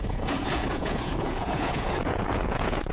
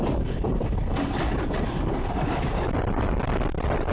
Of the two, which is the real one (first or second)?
second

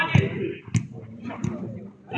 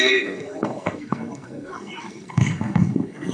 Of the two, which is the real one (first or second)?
first